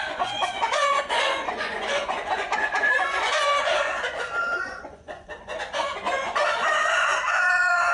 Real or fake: fake